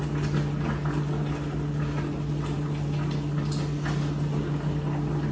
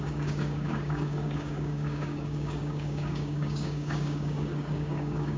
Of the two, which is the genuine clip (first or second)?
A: first